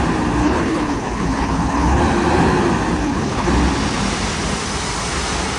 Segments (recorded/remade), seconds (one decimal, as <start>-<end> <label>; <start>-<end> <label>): 0.0-0.4 recorded; 0.4-2.0 remade; 2.0-3.0 recorded; 3.0-3.5 remade; 3.5-5.6 recorded